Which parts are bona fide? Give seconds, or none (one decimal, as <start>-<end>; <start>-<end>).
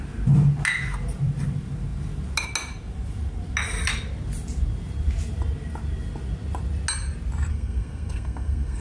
0.0-7.5